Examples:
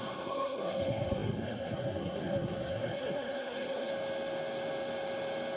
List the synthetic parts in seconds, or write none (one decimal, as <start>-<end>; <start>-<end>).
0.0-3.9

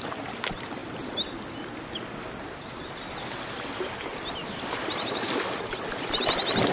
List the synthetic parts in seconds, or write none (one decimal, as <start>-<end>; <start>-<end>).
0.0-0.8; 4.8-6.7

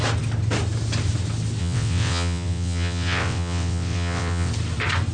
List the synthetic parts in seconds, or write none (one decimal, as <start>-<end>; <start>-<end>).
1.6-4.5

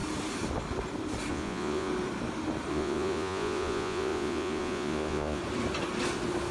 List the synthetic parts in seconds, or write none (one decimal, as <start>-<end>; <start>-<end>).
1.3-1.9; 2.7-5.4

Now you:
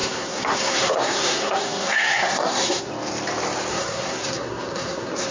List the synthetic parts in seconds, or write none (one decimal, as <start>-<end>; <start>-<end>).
0.0-2.9; 3.7-5.3